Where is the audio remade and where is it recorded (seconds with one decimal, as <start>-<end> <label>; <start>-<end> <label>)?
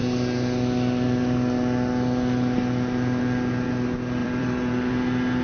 0.0-4.2 recorded; 4.2-4.9 remade; 4.9-5.4 recorded